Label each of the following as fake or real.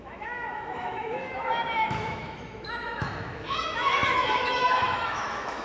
fake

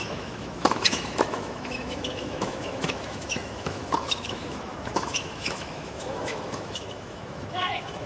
fake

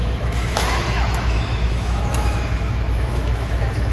fake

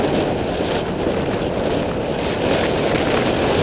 real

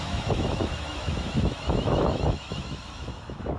fake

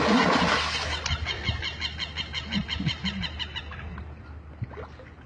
real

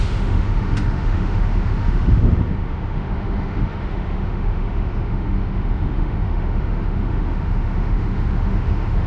fake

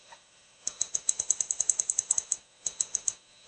fake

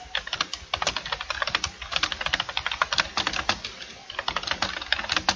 real